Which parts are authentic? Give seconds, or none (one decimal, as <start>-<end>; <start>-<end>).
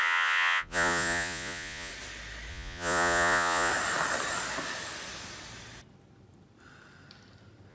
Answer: 1.9-2.5; 3.7-7.7